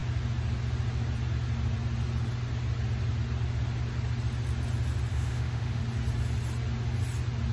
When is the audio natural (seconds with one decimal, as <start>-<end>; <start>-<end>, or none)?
0.0-5.1; 5.8-7.5